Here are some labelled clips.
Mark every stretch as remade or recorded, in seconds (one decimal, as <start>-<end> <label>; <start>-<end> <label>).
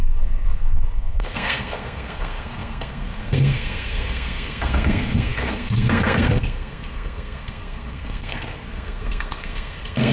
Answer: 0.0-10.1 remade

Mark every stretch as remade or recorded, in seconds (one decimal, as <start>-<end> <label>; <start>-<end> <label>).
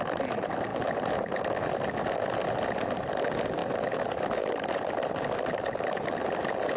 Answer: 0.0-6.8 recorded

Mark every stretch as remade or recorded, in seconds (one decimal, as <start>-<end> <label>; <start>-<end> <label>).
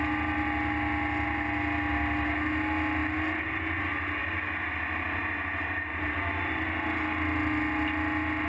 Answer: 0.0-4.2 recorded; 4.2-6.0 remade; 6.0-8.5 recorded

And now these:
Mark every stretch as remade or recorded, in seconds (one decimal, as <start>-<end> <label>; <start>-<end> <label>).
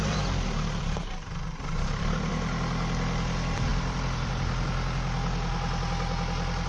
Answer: 0.0-2.3 remade; 2.3-3.7 recorded; 3.7-4.3 remade; 4.3-6.7 recorded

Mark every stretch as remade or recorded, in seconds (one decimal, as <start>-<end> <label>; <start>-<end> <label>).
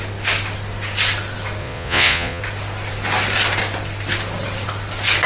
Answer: 0.0-1.6 recorded; 1.6-2.4 remade; 2.4-5.3 recorded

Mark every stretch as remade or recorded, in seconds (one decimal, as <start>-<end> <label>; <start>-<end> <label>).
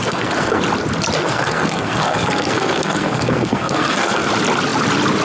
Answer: 0.0-0.6 remade; 0.6-1.2 recorded; 1.2-4.3 remade; 4.3-5.2 recorded